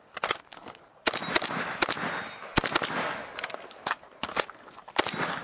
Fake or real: real